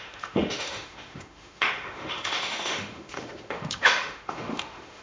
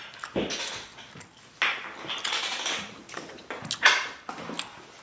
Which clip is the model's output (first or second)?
first